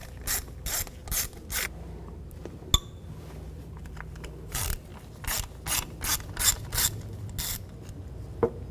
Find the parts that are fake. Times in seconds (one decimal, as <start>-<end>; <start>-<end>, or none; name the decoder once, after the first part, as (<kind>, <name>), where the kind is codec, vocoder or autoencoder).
2.0-2.4 (vocoder, BigVGAN v2); 3.6-4.9

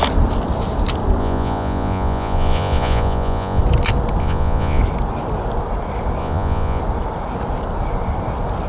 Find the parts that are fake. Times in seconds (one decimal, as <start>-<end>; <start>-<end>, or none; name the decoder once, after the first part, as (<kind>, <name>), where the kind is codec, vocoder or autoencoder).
1.2-3.6 (vocoder, Vocos); 4.2-4.8; 6.2-6.8

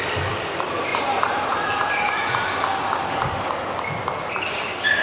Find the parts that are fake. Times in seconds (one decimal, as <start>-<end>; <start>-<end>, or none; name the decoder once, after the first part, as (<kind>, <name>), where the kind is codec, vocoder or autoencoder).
0.9-2.1 (vocoder, BigVGAN v2)